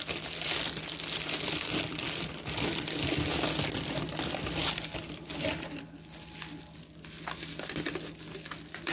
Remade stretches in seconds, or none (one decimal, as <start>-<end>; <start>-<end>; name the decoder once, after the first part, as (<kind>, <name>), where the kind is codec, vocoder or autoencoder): none